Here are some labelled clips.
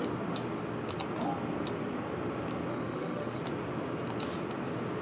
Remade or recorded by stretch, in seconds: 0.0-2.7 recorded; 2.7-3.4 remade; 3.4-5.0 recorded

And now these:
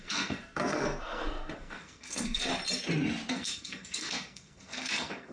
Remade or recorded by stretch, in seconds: 0.0-2.5 remade; 2.5-3.3 recorded; 3.3-5.3 remade

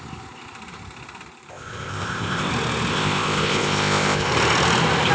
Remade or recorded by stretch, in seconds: 0.0-1.5 recorded; 1.5-2.5 remade; 2.5-2.9 recorded; 2.9-4.3 remade; 4.3-5.1 recorded

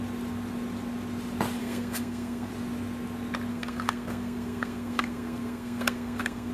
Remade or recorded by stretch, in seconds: 0.0-1.6 recorded; 1.6-2.5 remade; 2.5-3.5 recorded; 3.5-6.5 remade

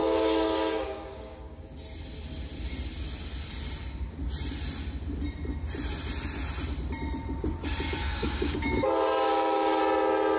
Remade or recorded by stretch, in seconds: 0.0-1.6 remade; 1.6-8.0 recorded; 8.0-9.8 remade; 9.8-10.4 recorded